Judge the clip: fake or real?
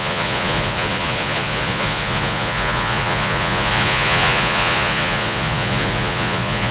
fake